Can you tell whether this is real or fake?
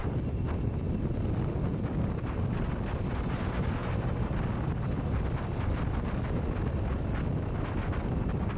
real